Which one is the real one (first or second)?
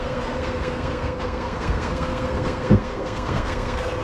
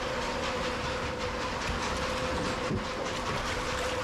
second